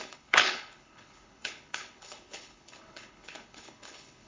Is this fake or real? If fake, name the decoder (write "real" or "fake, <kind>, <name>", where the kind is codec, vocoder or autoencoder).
fake, codec, HILCodec